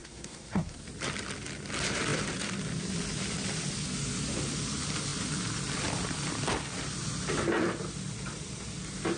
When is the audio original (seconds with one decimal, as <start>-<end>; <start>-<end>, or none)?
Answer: 0.8-9.2